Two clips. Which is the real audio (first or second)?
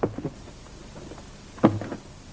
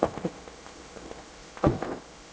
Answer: first